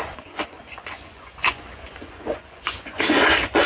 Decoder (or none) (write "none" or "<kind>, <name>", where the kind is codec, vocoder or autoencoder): vocoder, Vocos